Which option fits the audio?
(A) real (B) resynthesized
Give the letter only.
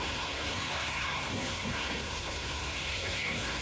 B